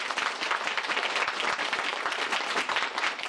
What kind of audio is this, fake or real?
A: real